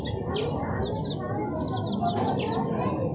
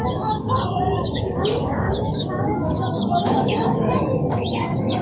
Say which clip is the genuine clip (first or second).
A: first